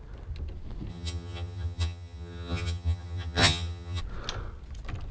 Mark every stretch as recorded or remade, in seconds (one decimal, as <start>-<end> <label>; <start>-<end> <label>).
0.0-0.9 recorded; 0.9-4.0 remade; 4.0-5.1 recorded